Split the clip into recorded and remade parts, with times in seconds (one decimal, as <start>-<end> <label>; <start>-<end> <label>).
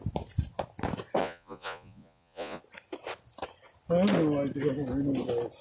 0.0-1.2 recorded; 1.2-2.6 remade; 2.6-5.6 recorded